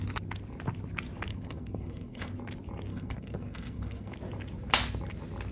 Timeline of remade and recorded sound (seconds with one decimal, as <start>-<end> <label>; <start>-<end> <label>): 0.0-1.3 recorded; 1.3-2.3 remade; 2.3-2.9 recorded; 2.9-4.1 remade; 4.1-5.5 recorded